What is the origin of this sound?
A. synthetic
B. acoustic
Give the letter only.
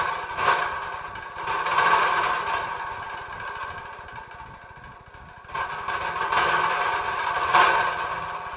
B